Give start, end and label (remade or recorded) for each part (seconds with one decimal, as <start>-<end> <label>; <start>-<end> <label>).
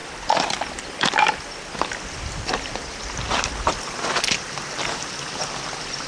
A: 0.0-6.1 recorded